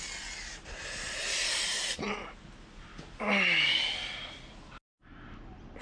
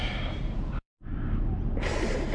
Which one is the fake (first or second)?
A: second